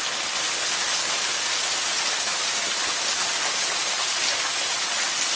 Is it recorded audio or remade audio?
recorded